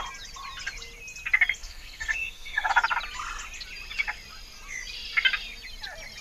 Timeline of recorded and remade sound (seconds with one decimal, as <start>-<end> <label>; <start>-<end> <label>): 0.0-1.6 recorded; 1.6-2.7 remade; 2.7-6.2 recorded